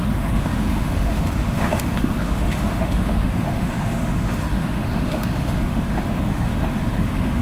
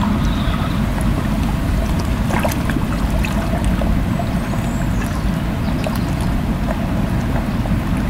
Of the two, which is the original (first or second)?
second